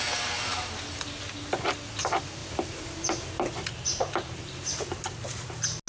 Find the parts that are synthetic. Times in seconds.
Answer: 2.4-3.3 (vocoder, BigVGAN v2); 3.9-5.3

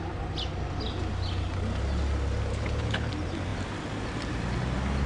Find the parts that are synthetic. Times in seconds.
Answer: 2.5-3.1 (codec, HILCodec)

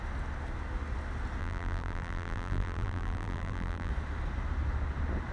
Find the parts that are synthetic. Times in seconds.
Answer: 1.4-3.9 (vocoder, BigVGAN v2)

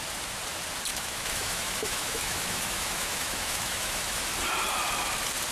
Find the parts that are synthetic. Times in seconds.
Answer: 0.9-4.2 (autoencoder, DAC-VAE)